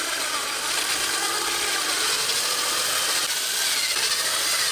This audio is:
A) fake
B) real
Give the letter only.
B